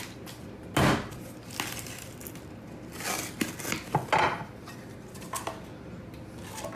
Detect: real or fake real